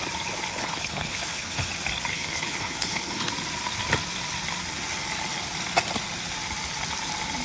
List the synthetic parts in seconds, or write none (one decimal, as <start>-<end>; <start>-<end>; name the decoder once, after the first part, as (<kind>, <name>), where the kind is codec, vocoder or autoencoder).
0.5-1.7 (codec, HILCodec); 2.1-3.3